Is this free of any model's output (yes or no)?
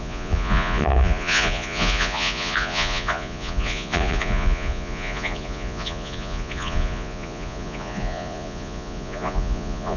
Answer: no